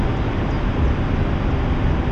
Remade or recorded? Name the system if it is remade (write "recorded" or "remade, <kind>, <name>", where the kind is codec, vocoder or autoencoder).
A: recorded